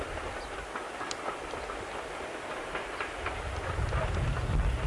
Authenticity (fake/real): real